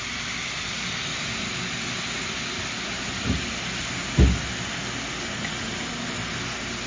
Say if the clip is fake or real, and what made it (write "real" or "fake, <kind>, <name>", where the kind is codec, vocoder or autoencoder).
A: real